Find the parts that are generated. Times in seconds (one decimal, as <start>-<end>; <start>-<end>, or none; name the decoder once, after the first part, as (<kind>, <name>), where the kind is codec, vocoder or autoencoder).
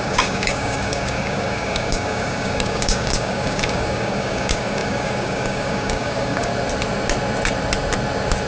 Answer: 0.0-6.5 (codec, DAC)